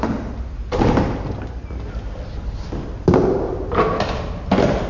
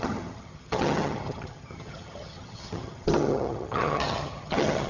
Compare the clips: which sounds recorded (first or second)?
first